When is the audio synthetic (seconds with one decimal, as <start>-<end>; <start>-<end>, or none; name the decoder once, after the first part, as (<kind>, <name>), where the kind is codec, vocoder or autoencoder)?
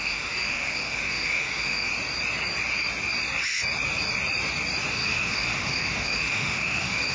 0.0-1.9 (autoencoder, DAC-VAE); 4.9-7.1